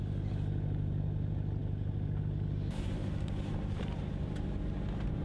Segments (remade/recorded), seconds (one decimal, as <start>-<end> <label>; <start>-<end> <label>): 0.0-5.2 recorded